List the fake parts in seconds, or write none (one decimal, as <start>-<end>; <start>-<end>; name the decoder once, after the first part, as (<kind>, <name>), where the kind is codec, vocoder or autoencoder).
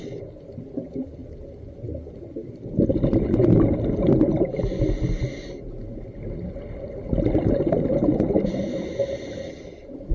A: none